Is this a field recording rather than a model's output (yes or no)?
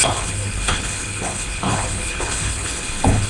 no